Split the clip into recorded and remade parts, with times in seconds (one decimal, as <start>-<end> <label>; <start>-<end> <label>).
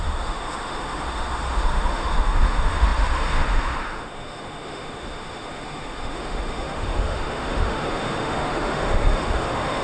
0.0-9.8 remade